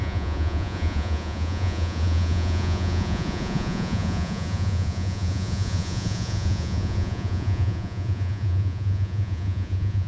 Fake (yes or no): yes